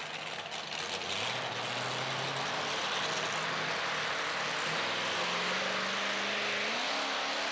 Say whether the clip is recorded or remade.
recorded